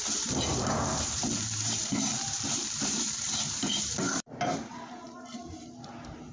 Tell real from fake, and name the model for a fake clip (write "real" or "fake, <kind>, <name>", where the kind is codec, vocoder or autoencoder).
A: fake, vocoder, BigVGAN v2